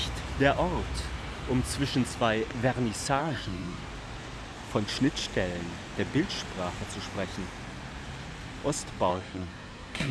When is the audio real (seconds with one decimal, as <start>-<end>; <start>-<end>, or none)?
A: 0.0-3.2; 3.8-9.1

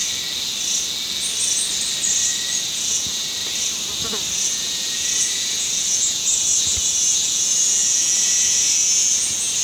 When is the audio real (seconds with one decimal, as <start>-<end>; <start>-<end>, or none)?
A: 0.0-2.6; 3.4-4.4

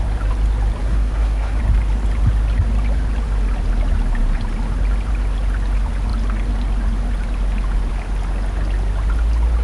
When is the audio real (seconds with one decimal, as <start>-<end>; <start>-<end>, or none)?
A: 0.0-0.8; 1.6-9.6

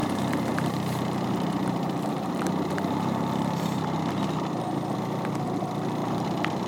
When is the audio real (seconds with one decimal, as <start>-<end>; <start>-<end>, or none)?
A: 3.8-6.0

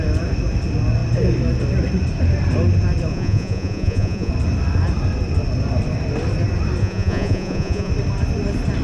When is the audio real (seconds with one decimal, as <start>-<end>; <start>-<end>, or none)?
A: 0.0-3.1; 4.3-6.8; 7.9-8.8

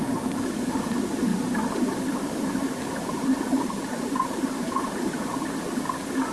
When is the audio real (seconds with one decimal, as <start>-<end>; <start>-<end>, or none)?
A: 0.0-1.3; 5.1-6.3

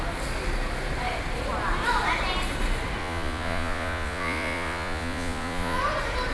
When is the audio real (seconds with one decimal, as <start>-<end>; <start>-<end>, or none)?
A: 0.0-3.0; 5.8-6.3